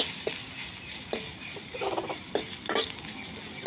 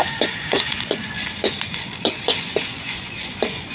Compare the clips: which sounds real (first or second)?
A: first